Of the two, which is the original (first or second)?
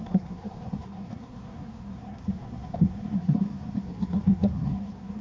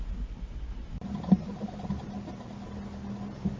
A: second